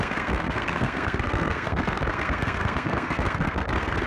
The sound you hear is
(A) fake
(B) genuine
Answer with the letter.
A